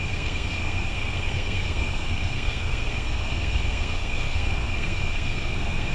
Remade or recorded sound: remade